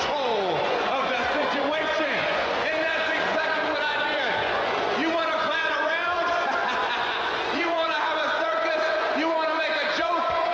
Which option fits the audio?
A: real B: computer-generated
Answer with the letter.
B